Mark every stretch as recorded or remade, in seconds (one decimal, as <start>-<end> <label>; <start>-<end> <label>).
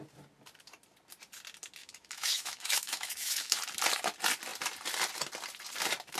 0.0-1.8 recorded; 1.8-3.6 remade; 3.6-6.2 recorded